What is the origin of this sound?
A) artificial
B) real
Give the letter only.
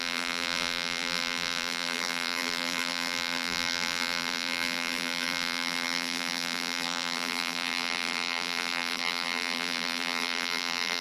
A